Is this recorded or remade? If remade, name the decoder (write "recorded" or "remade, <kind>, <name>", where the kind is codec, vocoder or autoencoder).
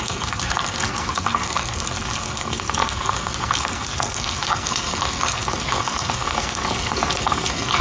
remade, codec, SNAC